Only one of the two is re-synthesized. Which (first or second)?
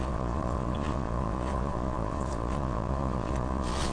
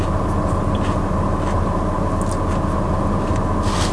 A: first